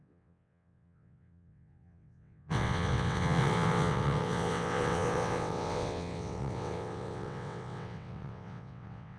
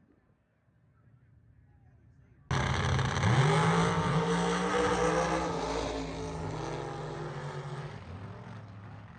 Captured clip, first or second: second